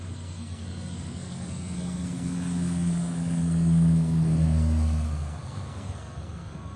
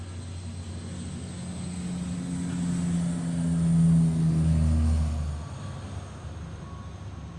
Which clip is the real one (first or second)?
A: second